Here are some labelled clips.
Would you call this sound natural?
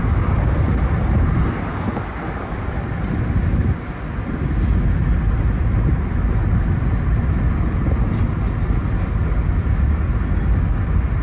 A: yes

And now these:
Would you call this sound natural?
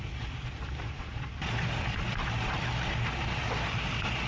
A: yes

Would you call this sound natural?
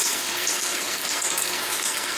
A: no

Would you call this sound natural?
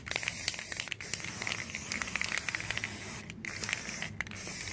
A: yes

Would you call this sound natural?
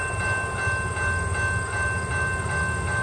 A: yes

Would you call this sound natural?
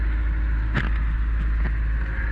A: yes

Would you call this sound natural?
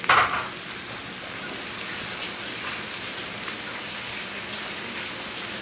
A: yes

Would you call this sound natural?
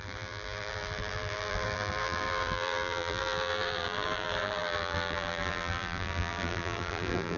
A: no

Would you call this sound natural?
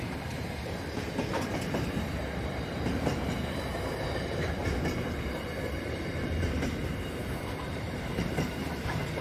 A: no